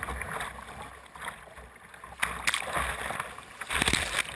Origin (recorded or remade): recorded